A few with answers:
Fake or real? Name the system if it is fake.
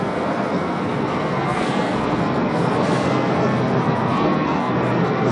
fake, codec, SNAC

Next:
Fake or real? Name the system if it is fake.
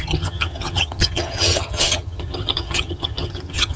fake, vocoder, HiFi-GAN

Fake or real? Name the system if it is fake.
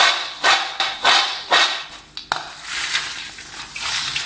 real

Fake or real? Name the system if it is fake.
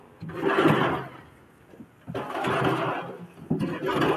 real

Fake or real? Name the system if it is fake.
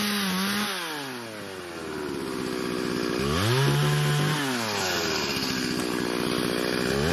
real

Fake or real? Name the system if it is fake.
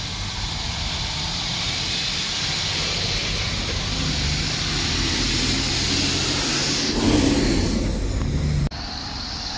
real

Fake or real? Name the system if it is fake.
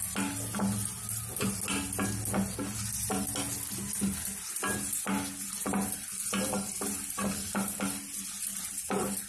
real